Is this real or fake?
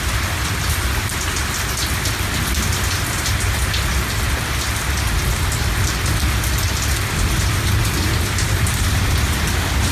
real